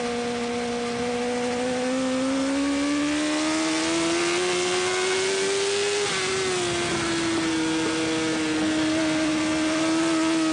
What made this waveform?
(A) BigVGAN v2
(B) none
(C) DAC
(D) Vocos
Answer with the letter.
B